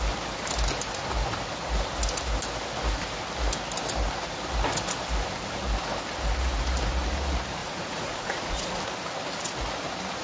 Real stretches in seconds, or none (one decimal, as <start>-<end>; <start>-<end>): 0.0-7.6; 8.8-10.2